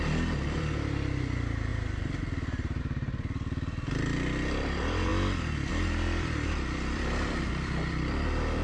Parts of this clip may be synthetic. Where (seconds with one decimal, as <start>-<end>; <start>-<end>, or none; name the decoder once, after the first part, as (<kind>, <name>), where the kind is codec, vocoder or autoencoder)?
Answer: 0.0-5.1 (vocoder, BigVGAN v2); 5.7-8.6